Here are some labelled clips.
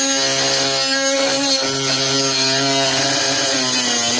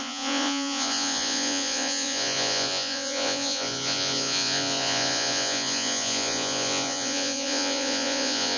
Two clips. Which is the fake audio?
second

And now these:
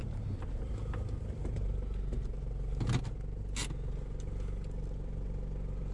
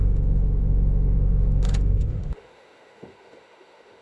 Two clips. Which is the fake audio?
second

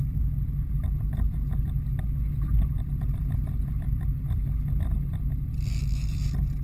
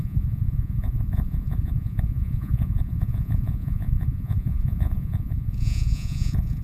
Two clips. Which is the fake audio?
second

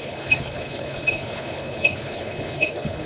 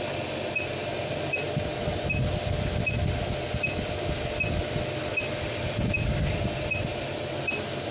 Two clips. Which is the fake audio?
first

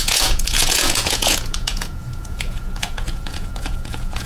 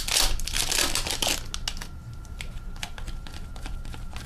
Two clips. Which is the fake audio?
first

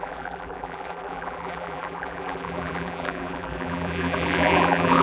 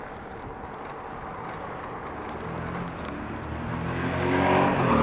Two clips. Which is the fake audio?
first